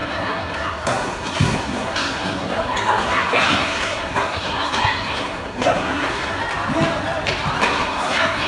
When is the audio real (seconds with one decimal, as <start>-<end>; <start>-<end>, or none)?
6.4-7.6